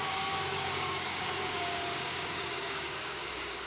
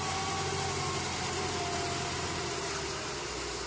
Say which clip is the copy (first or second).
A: first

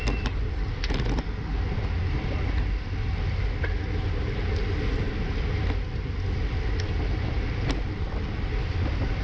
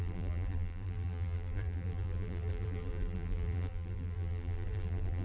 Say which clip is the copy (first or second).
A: second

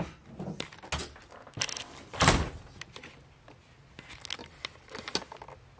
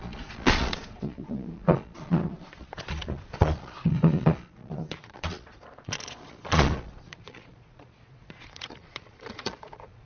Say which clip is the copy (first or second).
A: second